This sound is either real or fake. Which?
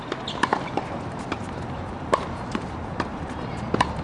fake